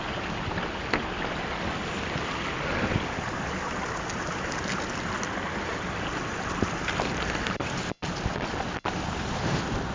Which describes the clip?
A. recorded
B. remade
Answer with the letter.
A